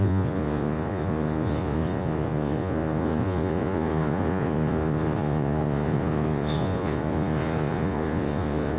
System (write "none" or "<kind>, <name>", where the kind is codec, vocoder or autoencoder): vocoder, Vocos